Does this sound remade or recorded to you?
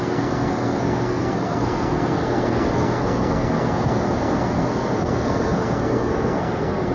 remade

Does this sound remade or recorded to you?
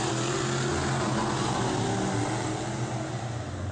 recorded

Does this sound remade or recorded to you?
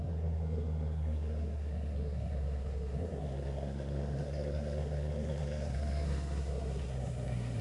remade